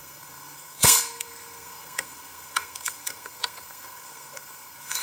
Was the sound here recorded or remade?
remade